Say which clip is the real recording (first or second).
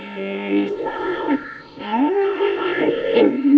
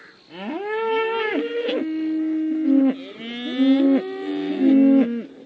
second